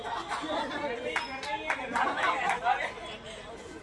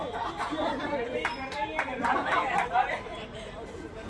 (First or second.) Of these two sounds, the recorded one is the first